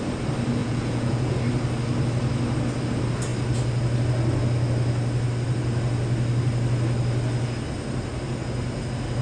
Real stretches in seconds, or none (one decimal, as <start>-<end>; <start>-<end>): 0.0-0.6; 1.4-9.2